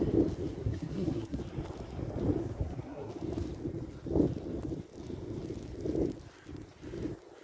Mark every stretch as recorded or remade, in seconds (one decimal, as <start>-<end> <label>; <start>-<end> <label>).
0.0-0.6 recorded; 0.6-1.4 remade; 1.4-2.4 recorded; 2.4-3.1 remade; 3.1-7.4 recorded